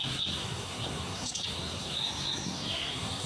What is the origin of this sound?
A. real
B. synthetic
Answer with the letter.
B